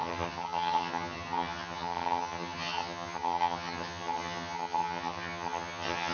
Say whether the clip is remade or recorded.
remade